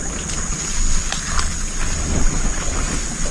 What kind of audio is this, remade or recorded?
recorded